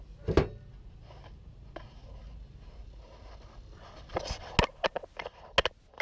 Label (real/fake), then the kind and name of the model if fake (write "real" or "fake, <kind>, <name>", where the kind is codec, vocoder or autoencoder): real